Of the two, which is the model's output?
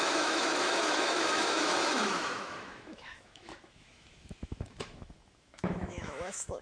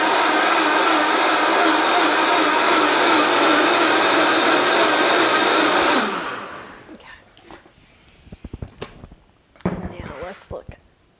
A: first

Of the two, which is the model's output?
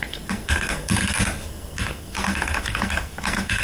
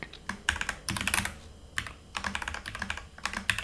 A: first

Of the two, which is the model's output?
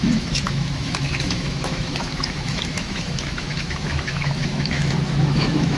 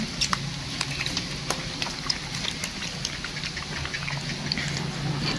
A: first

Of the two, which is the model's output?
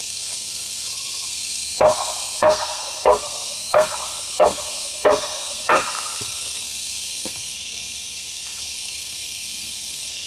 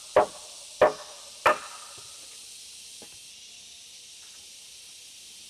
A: first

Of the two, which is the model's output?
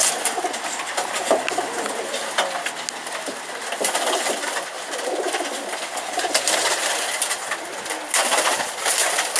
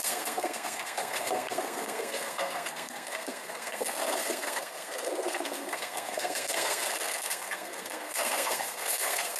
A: second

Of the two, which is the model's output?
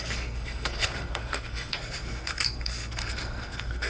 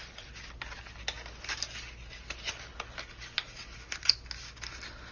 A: first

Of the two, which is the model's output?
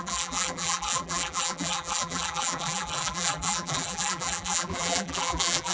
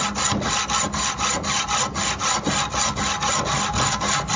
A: first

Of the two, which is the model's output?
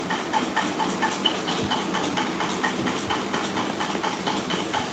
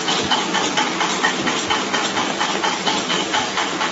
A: first